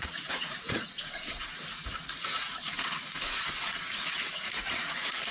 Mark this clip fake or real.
fake